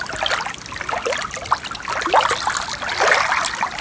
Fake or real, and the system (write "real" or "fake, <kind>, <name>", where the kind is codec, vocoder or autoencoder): real